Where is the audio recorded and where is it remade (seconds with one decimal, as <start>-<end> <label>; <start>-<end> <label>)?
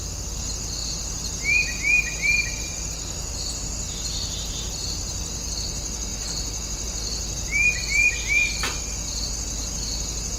0.0-10.4 recorded